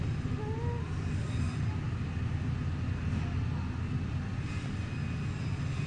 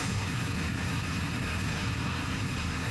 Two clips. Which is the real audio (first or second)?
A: first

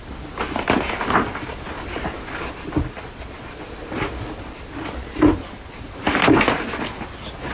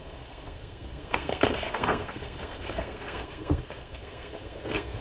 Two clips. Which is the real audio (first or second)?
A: first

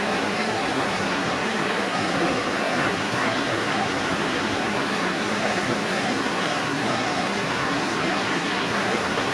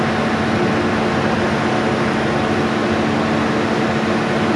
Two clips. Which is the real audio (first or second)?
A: second